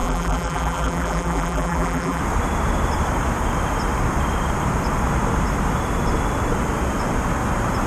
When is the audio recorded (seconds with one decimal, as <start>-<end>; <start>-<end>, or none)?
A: 2.2-7.9